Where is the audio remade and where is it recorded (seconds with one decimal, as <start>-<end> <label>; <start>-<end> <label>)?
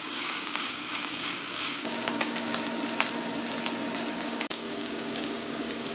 0.0-2.5 remade; 2.5-4.1 recorded; 4.1-5.9 remade